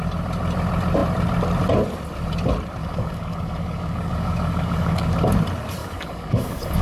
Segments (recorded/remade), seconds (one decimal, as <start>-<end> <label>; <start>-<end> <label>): 0.0-2.8 recorded; 2.8-5.3 remade; 5.3-5.8 recorded; 5.8-6.8 remade

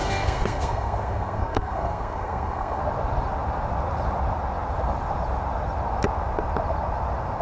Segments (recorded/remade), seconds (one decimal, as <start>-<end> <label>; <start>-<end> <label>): 0.0-2.8 remade; 2.8-7.4 recorded